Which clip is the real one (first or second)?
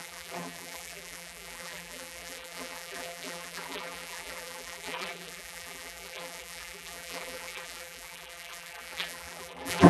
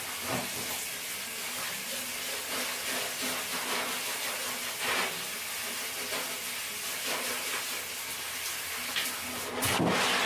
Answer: second